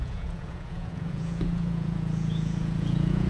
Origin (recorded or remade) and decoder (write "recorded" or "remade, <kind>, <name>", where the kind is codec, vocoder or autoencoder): remade, vocoder, Vocos